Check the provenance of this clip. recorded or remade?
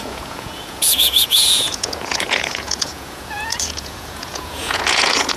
remade